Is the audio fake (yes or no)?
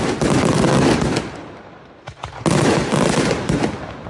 no